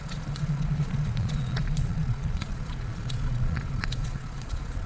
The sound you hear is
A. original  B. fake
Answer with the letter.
B